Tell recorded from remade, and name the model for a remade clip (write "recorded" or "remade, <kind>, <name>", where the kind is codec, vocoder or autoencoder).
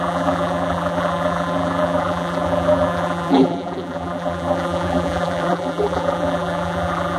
remade, vocoder, BigVGAN v2